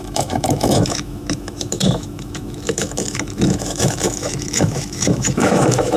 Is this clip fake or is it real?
fake